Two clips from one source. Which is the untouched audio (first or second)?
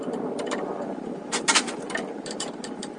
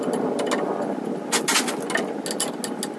second